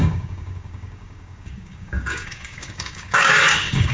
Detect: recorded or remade remade